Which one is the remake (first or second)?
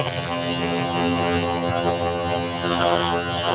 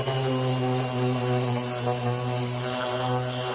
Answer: first